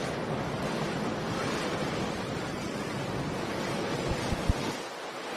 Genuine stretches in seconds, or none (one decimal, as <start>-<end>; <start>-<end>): 2.5-5.4